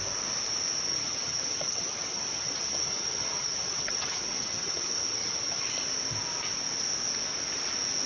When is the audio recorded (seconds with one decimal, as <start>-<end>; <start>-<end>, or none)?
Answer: 0.0-0.9; 5.6-8.1